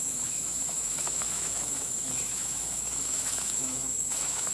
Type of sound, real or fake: fake